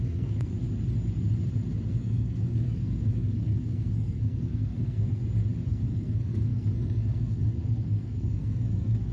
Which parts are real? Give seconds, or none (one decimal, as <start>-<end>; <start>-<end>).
0.6-1.9; 5.2-5.7